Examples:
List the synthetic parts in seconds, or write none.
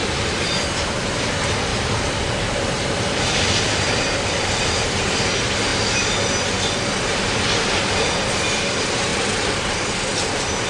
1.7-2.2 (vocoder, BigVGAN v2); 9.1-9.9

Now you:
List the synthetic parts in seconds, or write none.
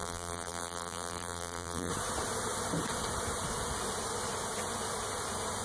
0.0-1.9 (vocoder, BigVGAN v2)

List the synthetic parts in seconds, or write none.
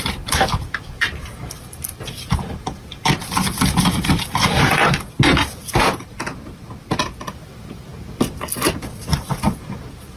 0.0-4.8 (vocoder, BigVGAN v2); 7.3-7.9; 8.7-10.2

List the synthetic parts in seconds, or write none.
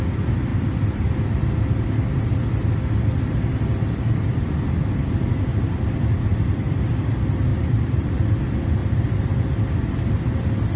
0.5-2.1 (vocoder, BigVGAN v2); 7.5-8.1